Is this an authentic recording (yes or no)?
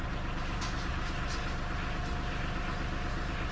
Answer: yes